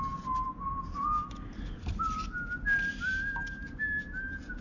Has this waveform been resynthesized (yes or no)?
no